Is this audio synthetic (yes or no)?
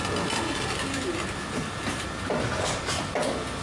no